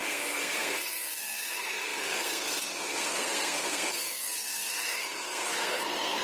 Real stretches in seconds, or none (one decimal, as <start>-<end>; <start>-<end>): none